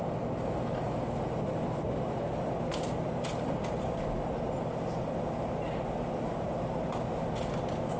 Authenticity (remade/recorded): recorded